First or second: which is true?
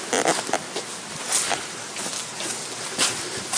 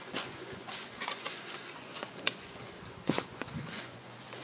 first